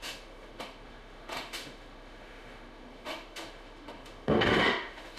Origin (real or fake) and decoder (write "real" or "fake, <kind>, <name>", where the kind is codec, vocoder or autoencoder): fake, autoencoder, DAC-VAE